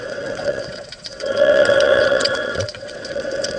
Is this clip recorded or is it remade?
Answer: remade